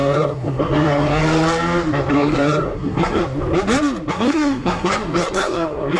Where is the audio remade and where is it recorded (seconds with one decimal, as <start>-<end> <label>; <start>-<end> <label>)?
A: 0.0-1.2 remade; 1.2-2.1 recorded; 2.1-3.2 remade; 3.2-4.1 recorded; 4.1-6.0 remade